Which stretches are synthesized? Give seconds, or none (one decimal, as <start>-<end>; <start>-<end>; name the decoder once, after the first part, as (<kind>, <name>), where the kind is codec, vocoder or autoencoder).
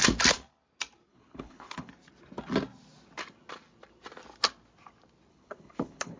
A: 1.1-1.9 (codec, HILCodec); 5.3-6.2